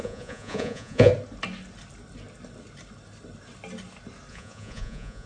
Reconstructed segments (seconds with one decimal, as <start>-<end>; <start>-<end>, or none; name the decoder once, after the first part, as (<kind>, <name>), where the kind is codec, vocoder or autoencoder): 0.0-1.1 (vocoder, Vocos); 4.3-5.3